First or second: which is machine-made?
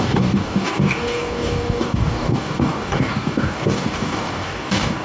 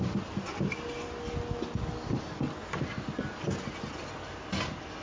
first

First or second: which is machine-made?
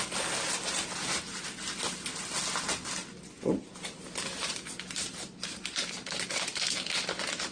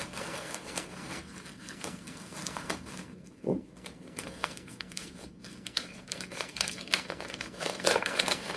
second